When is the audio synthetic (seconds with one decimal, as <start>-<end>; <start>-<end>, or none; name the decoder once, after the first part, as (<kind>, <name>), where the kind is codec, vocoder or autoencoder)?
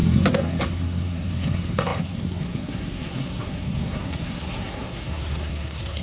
0.0-6.0 (codec, SNAC)